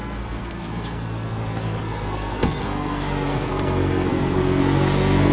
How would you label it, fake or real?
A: fake